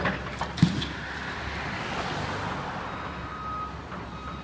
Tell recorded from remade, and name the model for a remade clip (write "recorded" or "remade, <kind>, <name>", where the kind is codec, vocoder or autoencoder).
recorded